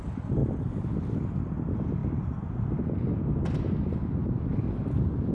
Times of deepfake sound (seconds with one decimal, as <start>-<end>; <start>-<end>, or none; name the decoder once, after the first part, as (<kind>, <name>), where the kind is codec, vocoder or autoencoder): none

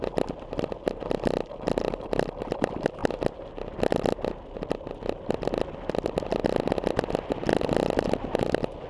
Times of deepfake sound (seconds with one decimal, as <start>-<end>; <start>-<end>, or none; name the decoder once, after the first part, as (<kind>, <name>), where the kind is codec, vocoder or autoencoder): none

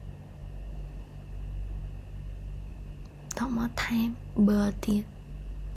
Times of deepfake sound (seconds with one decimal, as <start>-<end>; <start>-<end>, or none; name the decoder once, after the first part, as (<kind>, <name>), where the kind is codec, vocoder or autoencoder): none

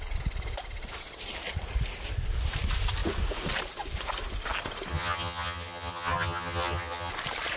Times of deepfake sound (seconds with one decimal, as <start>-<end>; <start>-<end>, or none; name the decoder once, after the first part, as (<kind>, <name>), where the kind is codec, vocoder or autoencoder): 4.9-7.1 (vocoder, HiFi-GAN)